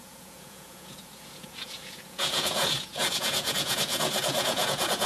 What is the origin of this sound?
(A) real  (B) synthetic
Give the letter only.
B